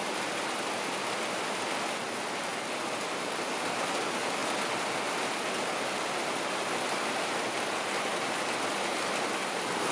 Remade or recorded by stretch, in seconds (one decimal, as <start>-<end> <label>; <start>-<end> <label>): 0.0-2.5 remade; 2.5-3.1 recorded; 3.1-4.4 remade; 4.4-9.4 recorded; 9.4-9.9 remade